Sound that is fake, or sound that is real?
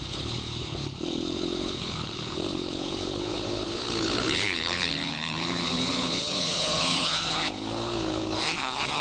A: fake